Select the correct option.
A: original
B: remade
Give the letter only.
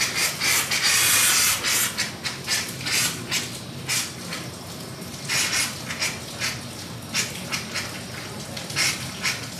A